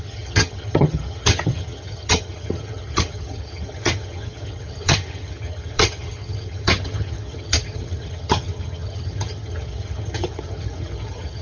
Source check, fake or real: fake